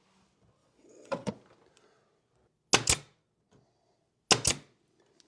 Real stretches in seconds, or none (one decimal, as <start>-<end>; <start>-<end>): 0.0-0.6; 1.3-5.3